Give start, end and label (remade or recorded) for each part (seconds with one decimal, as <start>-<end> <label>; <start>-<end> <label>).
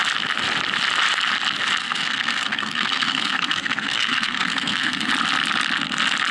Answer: 0.0-1.8 recorded; 1.8-5.1 remade; 5.1-6.3 recorded